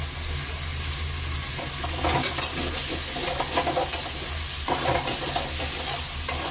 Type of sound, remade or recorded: recorded